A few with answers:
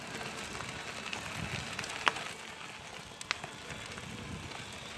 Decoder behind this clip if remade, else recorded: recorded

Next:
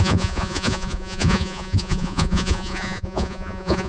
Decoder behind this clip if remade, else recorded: remade, vocoder, Vocos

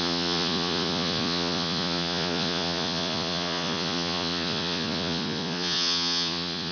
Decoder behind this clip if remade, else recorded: remade, vocoder, Vocos